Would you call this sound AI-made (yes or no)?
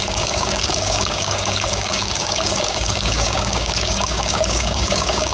yes